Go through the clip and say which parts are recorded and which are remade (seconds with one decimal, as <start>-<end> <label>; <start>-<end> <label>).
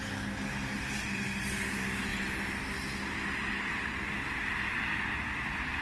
0.0-5.8 recorded